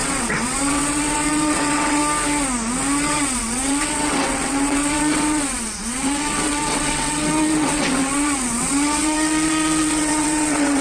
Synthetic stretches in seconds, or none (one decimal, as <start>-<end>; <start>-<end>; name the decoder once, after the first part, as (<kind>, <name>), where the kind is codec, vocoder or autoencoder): 0.0-2.0 (vocoder, WaveNeXt); 3.0-10.8